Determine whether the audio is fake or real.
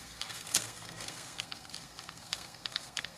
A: fake